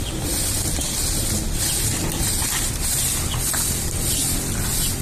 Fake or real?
real